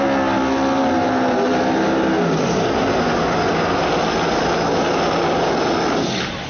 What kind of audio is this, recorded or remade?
recorded